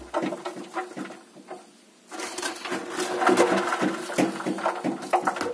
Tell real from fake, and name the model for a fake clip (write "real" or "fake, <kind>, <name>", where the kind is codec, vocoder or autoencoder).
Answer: real